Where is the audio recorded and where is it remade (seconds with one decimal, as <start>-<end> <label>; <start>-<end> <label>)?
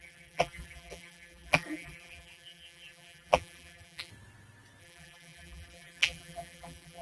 0.0-4.1 remade; 4.1-4.8 recorded; 4.8-7.0 remade